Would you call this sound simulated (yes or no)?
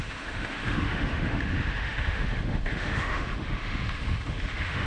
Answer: yes